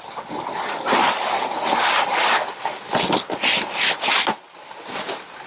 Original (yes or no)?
yes